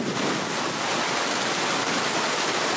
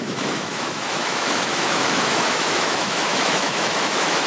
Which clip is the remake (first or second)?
second